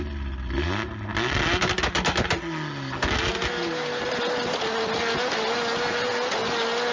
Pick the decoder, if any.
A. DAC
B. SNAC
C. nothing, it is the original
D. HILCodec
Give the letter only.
C